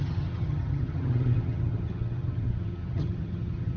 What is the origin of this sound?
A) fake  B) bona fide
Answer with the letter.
A